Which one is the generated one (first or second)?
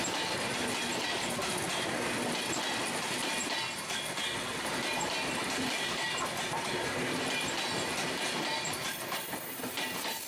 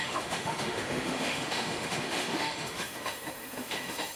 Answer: second